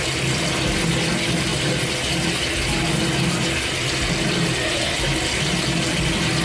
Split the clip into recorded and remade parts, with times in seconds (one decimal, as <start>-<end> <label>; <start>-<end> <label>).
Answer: 0.0-6.4 recorded